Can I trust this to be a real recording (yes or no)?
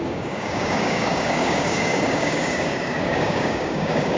no